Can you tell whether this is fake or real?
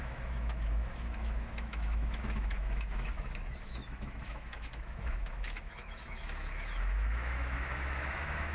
fake